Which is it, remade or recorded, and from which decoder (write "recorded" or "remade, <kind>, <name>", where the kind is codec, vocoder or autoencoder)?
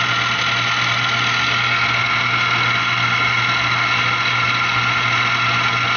recorded